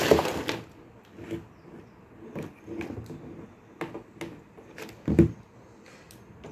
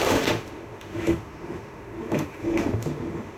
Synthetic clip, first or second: second